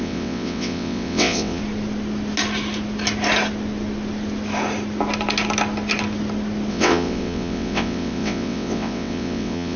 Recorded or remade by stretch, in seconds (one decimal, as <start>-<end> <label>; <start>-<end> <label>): 0.0-1.6 remade; 1.6-6.7 recorded; 6.7-9.8 remade